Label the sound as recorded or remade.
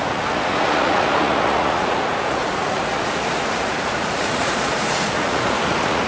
remade